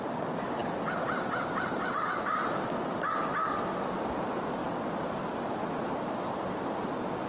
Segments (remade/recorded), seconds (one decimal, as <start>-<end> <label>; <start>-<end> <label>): 0.0-7.3 recorded